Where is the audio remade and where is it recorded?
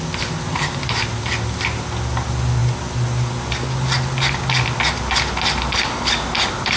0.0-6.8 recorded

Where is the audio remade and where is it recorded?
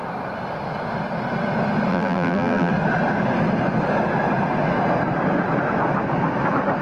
0.0-1.9 recorded; 1.9-2.7 remade; 2.7-6.8 recorded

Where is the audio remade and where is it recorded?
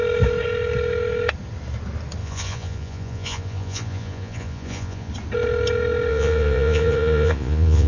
0.0-2.2 recorded; 2.2-5.1 remade; 5.1-6.1 recorded; 6.1-7.9 remade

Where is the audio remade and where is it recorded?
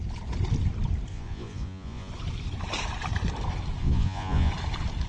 0.0-1.1 recorded; 1.1-2.1 remade; 2.1-3.8 recorded; 3.8-4.5 remade; 4.5-5.1 recorded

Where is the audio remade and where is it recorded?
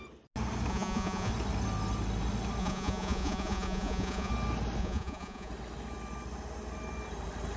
0.0-0.7 recorded; 0.7-1.3 remade; 1.3-2.6 recorded; 2.6-4.3 remade; 4.3-4.8 recorded; 4.8-5.5 remade; 5.5-7.6 recorded